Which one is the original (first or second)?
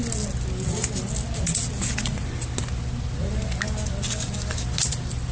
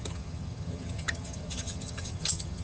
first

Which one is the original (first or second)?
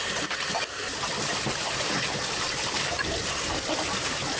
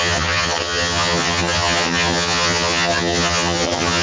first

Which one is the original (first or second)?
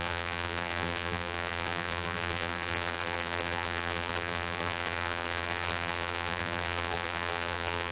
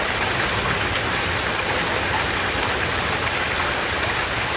second